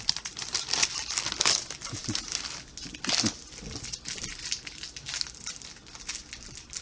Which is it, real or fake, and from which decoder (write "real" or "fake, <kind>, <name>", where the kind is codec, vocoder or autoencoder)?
real